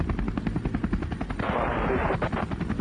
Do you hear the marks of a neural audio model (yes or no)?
no